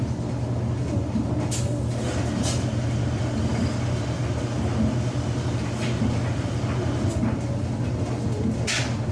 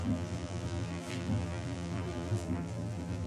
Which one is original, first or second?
first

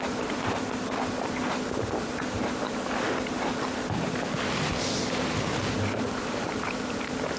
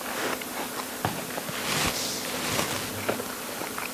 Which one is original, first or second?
second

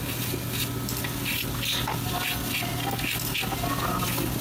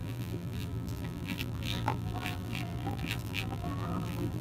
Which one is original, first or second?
first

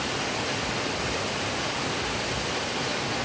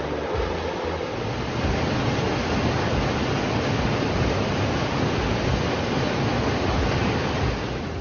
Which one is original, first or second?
second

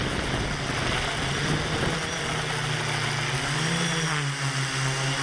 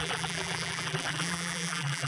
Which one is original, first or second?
first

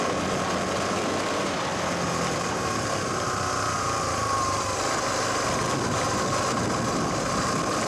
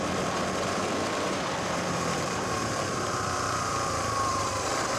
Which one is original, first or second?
first